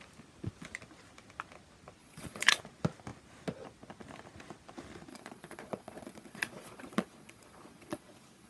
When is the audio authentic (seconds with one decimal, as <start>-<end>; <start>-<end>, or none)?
0.0-2.0; 2.6-5.1